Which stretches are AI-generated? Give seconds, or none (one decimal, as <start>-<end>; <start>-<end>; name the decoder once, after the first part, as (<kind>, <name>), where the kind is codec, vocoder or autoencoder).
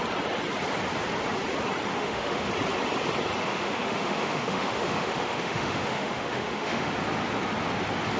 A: 1.9-2.5 (autoencoder, DAC-VAE); 3.4-6.9